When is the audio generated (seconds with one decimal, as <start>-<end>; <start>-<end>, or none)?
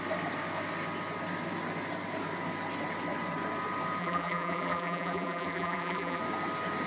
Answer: 4.0-6.2